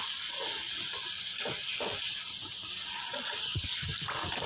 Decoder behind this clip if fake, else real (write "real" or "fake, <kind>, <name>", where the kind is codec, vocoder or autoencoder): real